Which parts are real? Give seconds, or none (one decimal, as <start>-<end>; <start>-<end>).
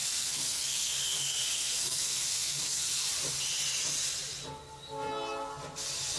3.1-6.2